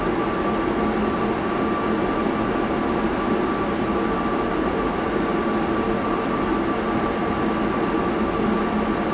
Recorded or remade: recorded